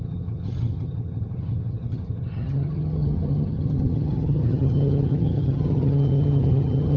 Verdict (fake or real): fake